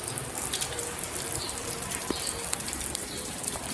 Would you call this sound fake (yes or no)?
yes